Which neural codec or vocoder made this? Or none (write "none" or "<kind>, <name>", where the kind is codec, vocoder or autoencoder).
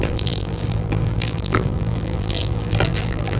vocoder, BigVGAN v2